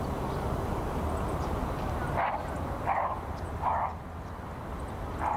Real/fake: real